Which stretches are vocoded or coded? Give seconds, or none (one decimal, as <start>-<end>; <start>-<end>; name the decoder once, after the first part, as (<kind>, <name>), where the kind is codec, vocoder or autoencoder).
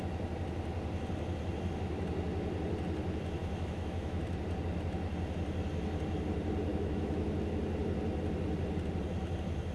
3.4-4.2 (autoencoder, DAC-VAE); 6.7-7.3